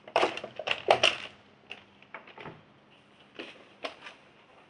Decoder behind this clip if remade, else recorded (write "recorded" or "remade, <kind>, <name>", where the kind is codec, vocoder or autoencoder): remade, vocoder, BigVGAN v2